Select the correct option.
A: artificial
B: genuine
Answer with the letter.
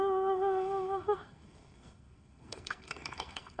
A